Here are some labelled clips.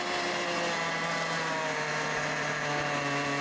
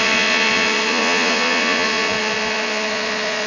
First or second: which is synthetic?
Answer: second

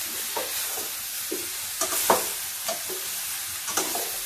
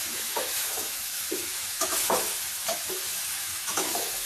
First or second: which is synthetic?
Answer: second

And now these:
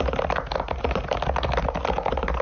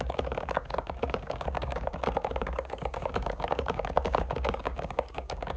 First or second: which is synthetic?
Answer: second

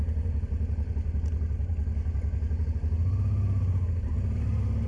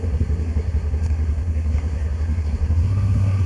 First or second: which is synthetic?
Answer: second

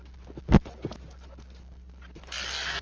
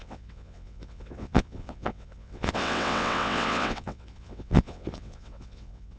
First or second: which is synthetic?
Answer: second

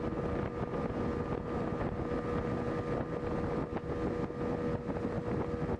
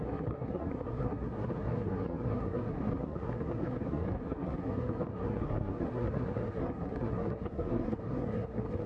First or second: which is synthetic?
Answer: second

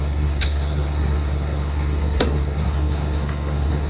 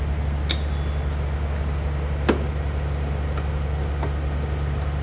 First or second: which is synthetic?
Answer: first